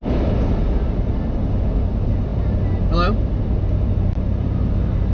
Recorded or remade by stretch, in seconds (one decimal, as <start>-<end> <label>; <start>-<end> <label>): 0.0-5.1 recorded

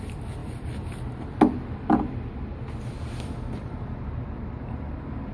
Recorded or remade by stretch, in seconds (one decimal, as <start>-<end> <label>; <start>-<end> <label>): 0.0-5.3 recorded

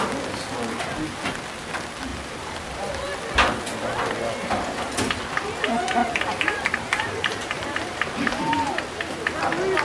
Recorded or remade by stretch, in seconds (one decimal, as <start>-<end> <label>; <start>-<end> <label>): 0.0-2.1 recorded; 2.1-2.9 remade; 2.9-6.0 recorded; 6.0-8.8 remade; 8.8-9.8 recorded

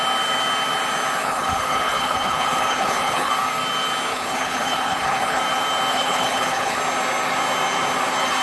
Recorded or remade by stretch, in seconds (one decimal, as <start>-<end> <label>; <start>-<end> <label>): 0.0-1.2 recorded; 1.2-3.3 remade; 3.3-4.1 recorded; 4.1-5.4 remade; 5.4-5.9 recorded; 5.9-6.8 remade; 6.8-8.4 recorded

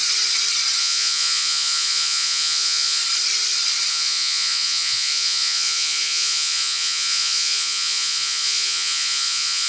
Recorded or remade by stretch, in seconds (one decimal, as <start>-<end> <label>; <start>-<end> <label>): 0.0-0.8 recorded; 0.8-3.0 remade; 3.0-3.9 recorded; 3.9-9.7 remade

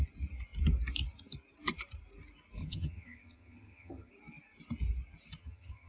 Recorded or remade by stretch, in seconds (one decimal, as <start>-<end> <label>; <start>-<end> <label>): 0.0-2.6 recorded; 2.6-4.1 remade; 4.1-5.4 recorded; 5.4-5.9 remade

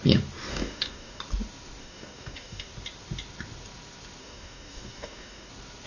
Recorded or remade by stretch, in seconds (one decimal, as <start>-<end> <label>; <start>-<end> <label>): 0.0-0.5 recorded; 0.5-1.2 remade; 1.2-1.8 recorded; 1.8-2.7 remade; 2.7-4.2 recorded; 4.2-5.5 remade; 5.5-5.9 recorded